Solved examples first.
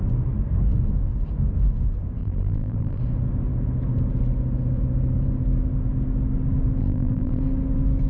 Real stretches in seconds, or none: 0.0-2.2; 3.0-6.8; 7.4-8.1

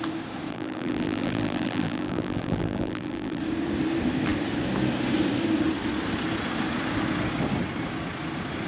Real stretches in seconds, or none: 0.0-0.5; 3.4-8.7

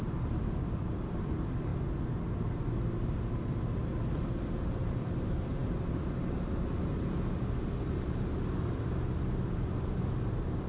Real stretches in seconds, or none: 1.7-2.4; 3.9-4.8; 5.6-8.5

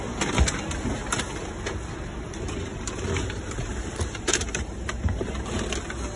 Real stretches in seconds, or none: 0.0-2.7; 5.5-6.2

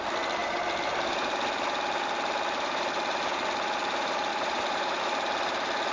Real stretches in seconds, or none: 0.0-4.3; 5.0-5.9

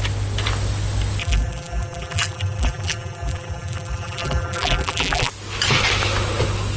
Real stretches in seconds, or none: 0.0-1.2; 5.3-6.8

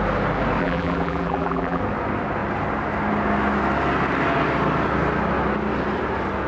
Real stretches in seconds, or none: 0.0-0.6; 1.8-6.5